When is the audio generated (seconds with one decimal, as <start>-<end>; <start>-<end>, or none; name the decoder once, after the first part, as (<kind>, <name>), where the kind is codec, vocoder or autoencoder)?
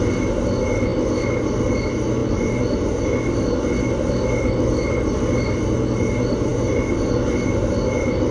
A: none